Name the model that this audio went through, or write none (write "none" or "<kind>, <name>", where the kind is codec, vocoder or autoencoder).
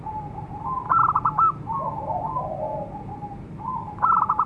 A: none